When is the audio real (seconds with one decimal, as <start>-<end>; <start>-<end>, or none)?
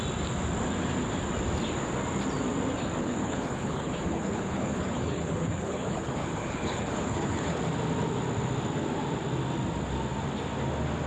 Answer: 0.0-3.0; 7.6-11.1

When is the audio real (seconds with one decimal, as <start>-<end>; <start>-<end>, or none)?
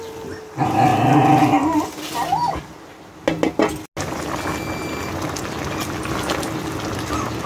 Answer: 0.0-7.5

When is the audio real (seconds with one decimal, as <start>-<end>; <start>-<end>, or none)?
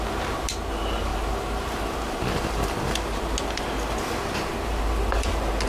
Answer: 0.0-5.7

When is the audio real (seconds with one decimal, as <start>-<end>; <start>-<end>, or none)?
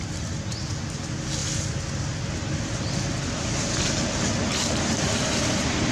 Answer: 0.0-5.9